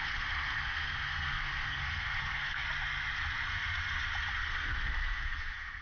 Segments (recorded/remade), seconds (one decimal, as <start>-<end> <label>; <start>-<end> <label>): 0.0-2.6 remade; 2.6-4.3 recorded; 4.3-5.8 remade